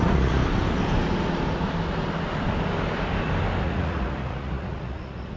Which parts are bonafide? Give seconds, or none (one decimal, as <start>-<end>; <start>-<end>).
0.4-3.6